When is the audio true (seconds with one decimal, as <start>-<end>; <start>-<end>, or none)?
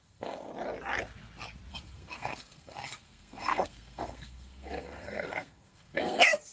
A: 0.5-1.7